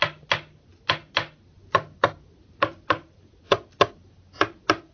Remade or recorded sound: recorded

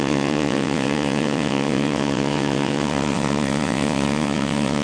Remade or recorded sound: remade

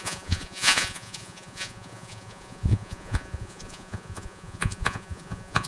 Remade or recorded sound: remade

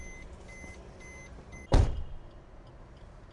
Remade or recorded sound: recorded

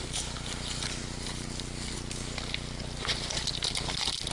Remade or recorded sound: recorded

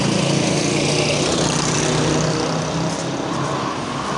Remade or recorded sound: recorded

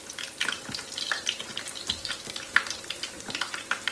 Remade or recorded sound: recorded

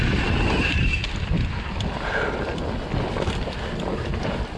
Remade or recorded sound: recorded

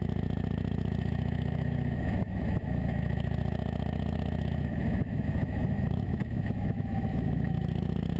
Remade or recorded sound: remade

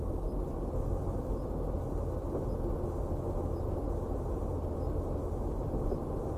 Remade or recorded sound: recorded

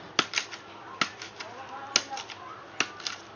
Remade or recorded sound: recorded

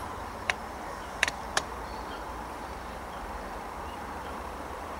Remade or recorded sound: remade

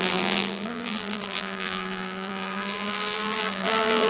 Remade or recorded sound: remade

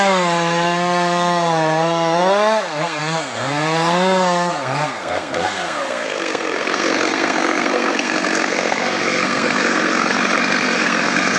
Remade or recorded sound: remade